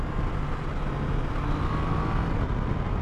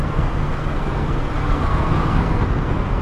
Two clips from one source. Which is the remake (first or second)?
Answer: second